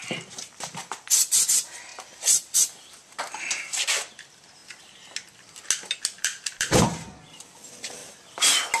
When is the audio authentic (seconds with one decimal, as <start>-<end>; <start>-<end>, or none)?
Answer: 1.9-3.2; 4.6-6.2; 8.0-8.8